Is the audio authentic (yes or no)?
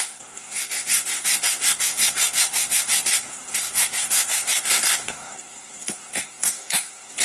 no